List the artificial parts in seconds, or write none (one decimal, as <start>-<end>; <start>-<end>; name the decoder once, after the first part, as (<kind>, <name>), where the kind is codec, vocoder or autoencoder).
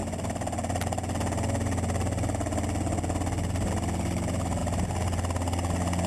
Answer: none